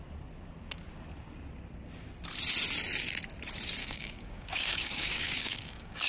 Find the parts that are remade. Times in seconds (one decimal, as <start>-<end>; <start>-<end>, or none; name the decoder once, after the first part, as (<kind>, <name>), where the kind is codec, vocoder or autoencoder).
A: 3.8-6.1 (codec, DAC)